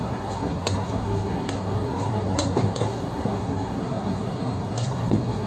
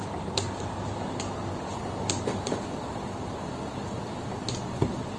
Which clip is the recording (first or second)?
second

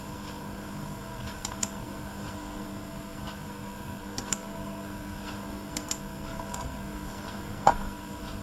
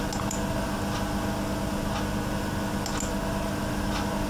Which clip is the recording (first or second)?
second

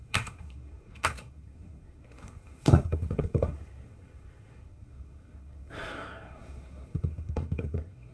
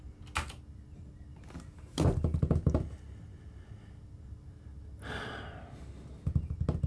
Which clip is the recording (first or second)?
second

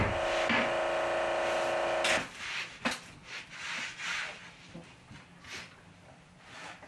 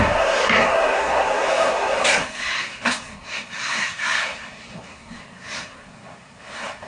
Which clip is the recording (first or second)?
first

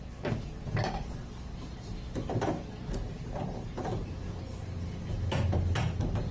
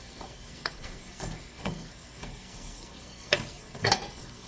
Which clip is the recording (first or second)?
first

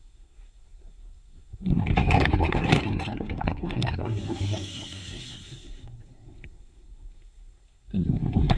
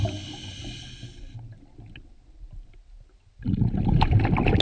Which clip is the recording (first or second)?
second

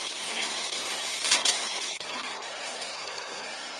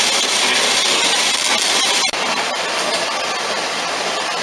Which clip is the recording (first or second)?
second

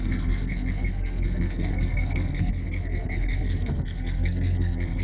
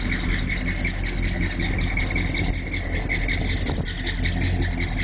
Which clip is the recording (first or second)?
second